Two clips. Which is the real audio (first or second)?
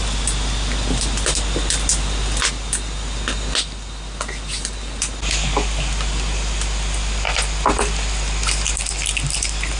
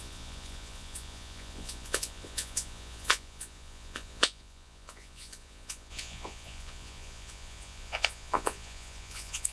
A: first